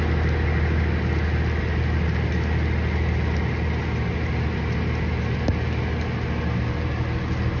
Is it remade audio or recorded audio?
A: recorded